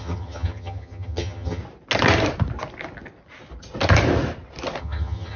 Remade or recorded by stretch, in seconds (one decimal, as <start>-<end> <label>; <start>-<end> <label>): 0.0-1.6 remade; 1.6-4.8 recorded; 4.8-5.4 remade